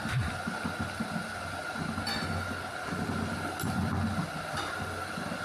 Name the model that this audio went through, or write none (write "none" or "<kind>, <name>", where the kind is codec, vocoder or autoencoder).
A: none